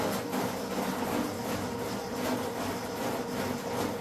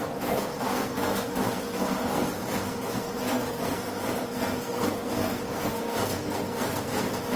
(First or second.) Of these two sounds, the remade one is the second